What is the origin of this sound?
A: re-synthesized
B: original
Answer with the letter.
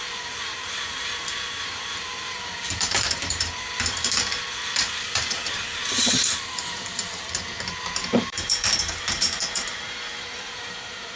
A